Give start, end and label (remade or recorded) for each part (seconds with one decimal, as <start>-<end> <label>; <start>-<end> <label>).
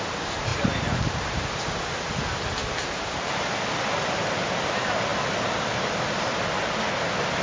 0.0-0.5 recorded; 0.5-1.6 remade; 1.6-2.6 recorded; 2.6-3.5 remade; 3.5-7.4 recorded